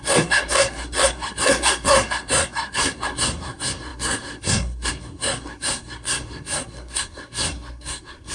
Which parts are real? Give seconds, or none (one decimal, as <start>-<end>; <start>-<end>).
none